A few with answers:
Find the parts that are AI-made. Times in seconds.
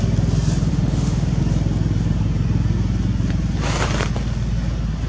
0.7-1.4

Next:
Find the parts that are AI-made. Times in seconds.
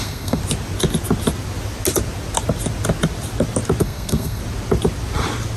0.0-0.4; 3.8-4.4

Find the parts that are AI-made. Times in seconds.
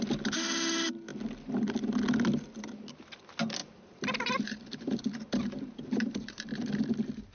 3.6-6.5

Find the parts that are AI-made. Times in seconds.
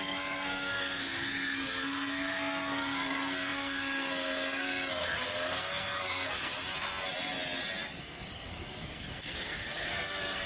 0.0-6.5; 8.0-10.5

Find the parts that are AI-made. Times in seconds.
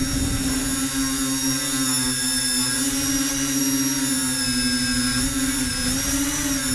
none